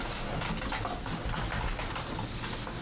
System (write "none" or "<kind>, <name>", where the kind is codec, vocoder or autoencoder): none